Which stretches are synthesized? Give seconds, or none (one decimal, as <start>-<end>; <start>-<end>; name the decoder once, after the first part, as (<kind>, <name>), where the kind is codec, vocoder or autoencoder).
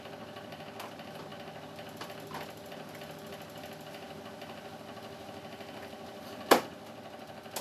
none